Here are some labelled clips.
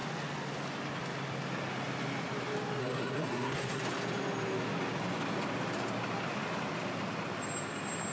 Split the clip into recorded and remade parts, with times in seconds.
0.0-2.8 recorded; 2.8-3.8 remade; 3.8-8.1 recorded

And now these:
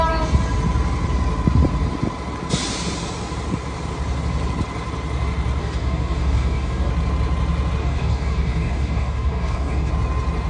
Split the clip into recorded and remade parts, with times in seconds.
0.0-5.6 recorded; 5.6-6.9 remade; 6.9-7.8 recorded; 7.8-9.9 remade; 9.9-10.5 recorded

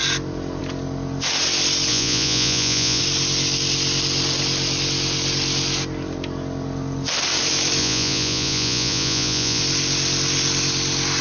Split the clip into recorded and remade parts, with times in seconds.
0.0-1.9 recorded; 1.9-3.0 remade; 3.0-7.8 recorded; 7.8-9.6 remade; 9.6-11.2 recorded

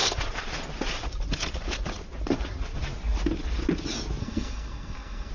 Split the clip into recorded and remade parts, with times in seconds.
0.0-4.2 recorded; 4.2-5.3 remade

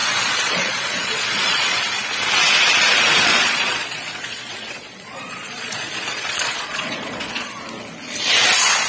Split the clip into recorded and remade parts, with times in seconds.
0.0-1.8 remade; 1.8-3.3 recorded; 3.3-7.6 remade; 7.6-8.9 recorded

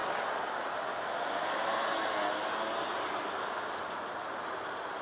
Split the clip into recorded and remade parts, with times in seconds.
0.0-5.0 recorded